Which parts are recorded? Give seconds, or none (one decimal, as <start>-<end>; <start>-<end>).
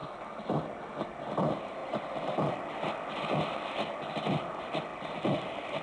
0.0-1.8; 2.6-4.9